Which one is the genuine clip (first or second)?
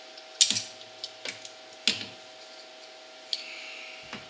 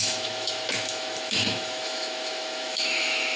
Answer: first